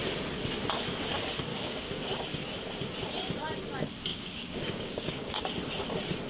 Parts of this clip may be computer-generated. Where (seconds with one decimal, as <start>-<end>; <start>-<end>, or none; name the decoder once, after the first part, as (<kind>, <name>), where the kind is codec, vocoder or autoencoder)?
1.5-2.2 (codec, DAC); 4.1-5.4